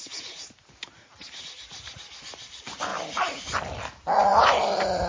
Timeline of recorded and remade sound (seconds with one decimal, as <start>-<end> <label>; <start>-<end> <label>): 0.0-5.1 recorded